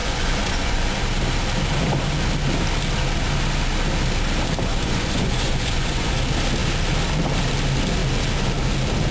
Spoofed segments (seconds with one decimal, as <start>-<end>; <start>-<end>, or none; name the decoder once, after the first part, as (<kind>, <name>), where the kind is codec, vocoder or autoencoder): 0.0-1.0 (vocoder, Vocos); 4.7-6.1